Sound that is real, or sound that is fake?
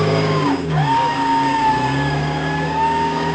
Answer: fake